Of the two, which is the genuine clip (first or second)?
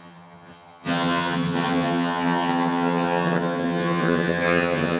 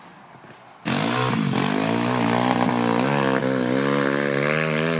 second